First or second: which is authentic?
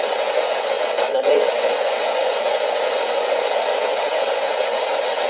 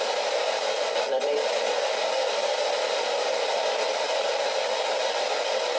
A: second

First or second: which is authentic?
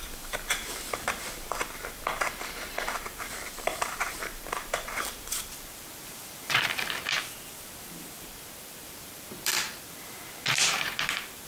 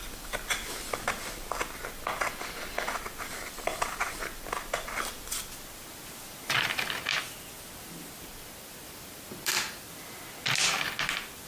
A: second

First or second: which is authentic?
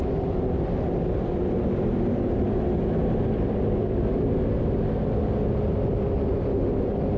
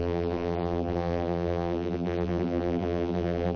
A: first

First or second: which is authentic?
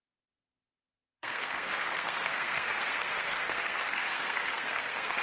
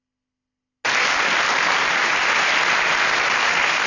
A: second